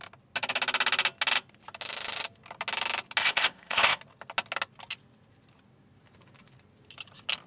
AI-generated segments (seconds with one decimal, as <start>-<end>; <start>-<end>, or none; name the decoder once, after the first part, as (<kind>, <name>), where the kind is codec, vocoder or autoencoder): 3.2-4.0 (codec, ZipCodec)